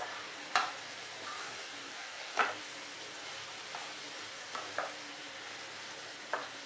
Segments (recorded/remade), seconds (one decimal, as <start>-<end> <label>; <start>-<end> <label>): 0.0-1.4 recorded; 1.4-2.4 remade; 2.4-6.7 recorded